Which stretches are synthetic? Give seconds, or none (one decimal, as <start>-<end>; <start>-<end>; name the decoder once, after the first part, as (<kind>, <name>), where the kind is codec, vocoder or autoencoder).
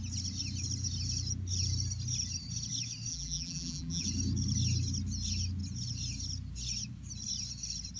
3.1-4.0 (vocoder, BigVGAN v2)